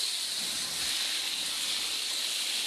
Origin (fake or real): real